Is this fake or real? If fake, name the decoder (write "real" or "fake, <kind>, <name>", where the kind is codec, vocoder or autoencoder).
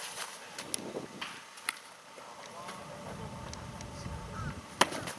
real